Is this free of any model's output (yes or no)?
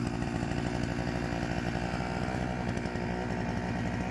yes